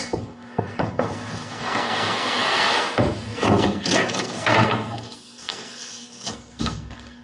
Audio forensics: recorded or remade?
remade